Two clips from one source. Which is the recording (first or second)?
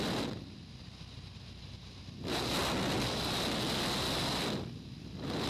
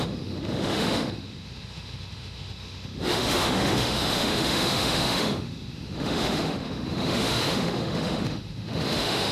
first